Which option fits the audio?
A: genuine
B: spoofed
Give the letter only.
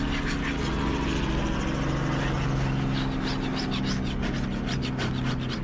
A